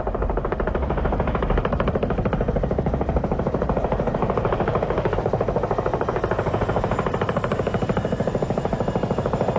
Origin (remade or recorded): remade